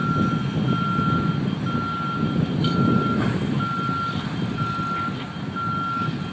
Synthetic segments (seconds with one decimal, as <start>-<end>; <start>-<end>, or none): none

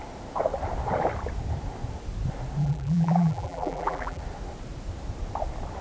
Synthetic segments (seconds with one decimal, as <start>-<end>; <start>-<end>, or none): 2.6-4.2

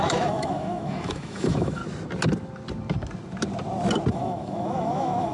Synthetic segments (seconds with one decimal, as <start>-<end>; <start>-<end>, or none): 0.0-1.8; 4.1-5.3

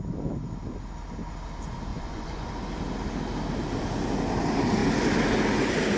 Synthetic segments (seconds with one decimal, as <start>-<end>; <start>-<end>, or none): 1.9-2.5

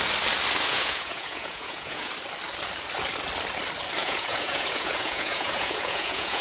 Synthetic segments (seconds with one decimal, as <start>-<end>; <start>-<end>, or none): 0.7-2.1; 4.0-6.4

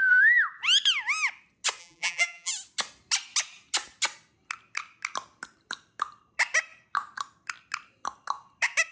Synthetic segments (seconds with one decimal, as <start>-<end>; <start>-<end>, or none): 1.8-2.5

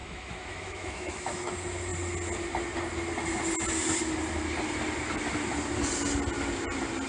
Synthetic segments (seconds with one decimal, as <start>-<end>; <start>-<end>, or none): 0.0-1.5